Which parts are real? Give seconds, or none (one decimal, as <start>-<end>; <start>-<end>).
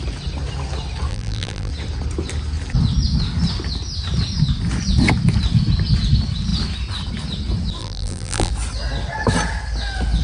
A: 0.0-1.1; 1.7-7.8; 8.5-10.2